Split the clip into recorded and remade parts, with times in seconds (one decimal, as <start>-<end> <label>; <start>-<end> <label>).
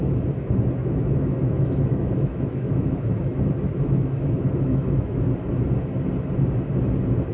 0.0-0.8 recorded; 0.8-5.2 remade; 5.2-7.3 recorded